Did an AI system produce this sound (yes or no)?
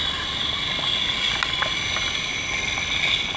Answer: no